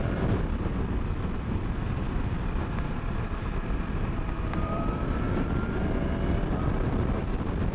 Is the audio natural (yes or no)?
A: no